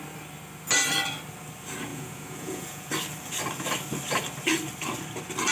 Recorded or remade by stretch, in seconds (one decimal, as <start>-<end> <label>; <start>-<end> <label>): 0.0-1.9 recorded; 1.9-2.9 remade; 2.9-5.5 recorded